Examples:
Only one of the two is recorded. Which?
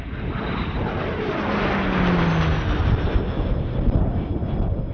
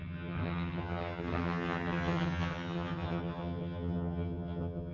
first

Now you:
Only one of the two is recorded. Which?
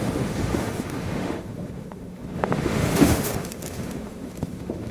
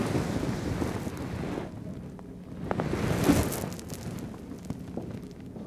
second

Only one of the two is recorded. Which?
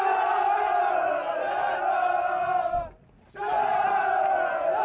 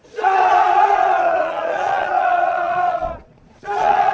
first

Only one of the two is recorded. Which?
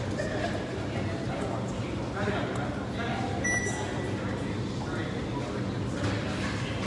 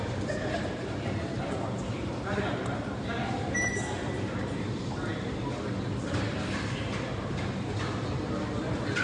first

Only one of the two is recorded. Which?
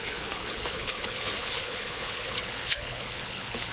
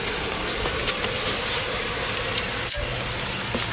second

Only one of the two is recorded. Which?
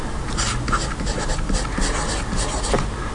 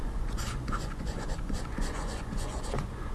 first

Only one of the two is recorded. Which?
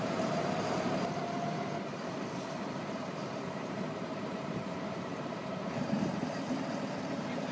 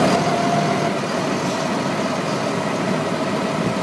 second